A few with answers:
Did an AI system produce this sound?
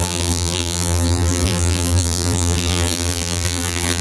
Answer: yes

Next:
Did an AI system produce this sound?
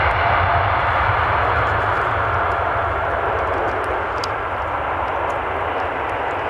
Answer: no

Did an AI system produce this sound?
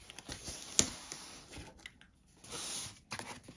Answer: no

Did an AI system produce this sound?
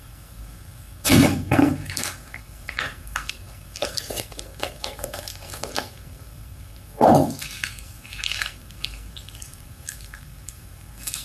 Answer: yes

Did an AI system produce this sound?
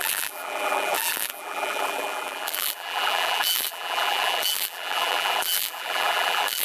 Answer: yes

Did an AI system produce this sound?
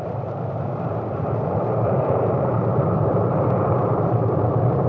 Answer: yes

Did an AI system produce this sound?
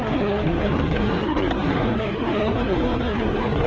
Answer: yes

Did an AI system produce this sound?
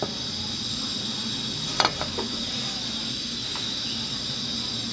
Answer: no